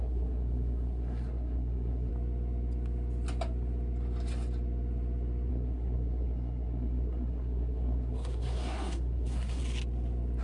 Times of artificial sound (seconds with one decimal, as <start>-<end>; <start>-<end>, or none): 0.0-2.1; 5.5-9.6